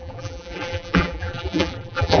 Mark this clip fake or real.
fake